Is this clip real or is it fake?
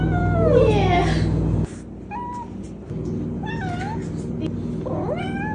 real